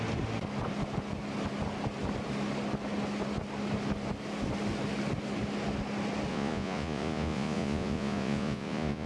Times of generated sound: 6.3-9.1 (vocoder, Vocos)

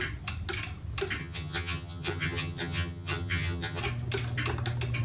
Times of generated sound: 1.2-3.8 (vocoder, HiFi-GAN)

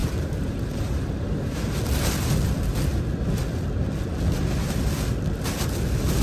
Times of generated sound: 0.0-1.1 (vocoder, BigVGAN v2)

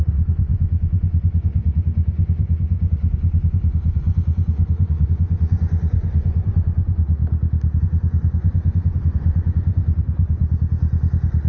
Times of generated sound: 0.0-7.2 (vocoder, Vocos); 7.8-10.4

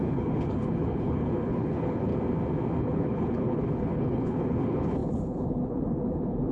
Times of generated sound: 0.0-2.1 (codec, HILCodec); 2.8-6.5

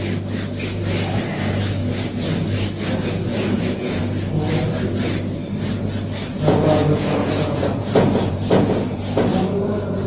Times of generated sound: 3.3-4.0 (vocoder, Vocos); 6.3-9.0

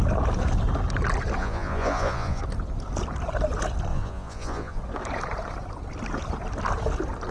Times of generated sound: 1.4-2.4 (vocoder, Vocos); 3.9-4.8